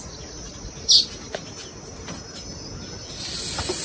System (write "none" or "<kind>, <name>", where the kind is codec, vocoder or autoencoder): none